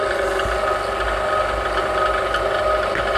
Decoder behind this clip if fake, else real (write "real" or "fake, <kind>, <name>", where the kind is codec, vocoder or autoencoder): real